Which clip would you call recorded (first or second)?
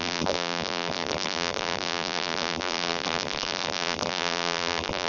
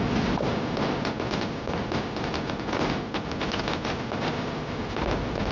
second